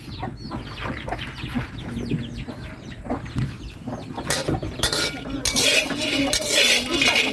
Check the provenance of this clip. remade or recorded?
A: recorded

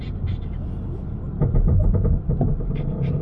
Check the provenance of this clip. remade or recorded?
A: remade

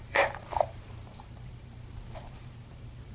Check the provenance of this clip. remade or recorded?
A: remade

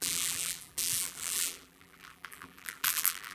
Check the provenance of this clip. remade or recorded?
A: remade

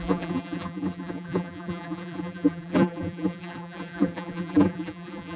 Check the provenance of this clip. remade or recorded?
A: remade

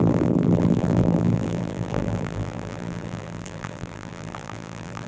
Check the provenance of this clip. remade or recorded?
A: remade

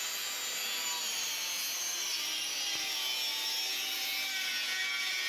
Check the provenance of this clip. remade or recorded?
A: recorded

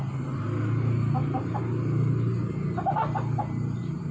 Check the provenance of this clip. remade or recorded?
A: recorded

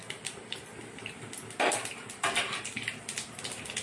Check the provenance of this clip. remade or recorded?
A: recorded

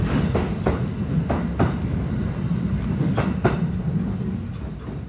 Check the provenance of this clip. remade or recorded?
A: recorded